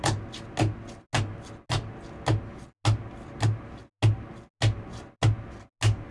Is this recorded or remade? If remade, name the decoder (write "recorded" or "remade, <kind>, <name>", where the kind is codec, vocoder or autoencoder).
recorded